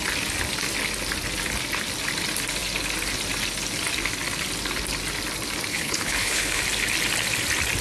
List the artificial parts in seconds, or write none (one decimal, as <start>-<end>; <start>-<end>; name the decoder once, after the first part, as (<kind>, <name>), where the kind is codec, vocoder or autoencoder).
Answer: 5.7-6.6 (codec, HILCodec)